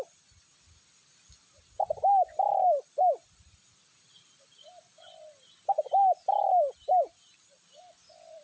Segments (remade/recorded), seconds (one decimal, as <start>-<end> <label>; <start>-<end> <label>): 0.0-8.4 recorded